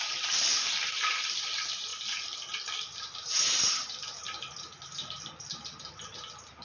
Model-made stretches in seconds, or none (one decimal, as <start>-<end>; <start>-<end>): none